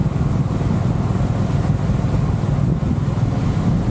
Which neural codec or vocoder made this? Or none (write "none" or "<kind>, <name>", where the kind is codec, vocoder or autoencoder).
none